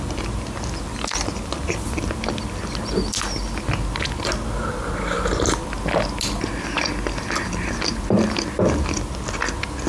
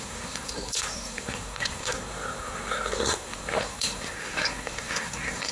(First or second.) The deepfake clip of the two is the second